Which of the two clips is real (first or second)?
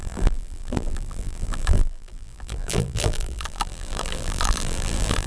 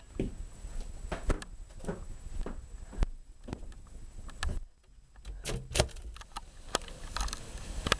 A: second